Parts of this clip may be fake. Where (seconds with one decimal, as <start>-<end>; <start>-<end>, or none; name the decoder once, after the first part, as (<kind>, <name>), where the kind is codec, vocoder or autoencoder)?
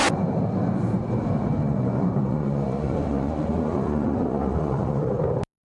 1.6-5.1 (vocoder, Vocos)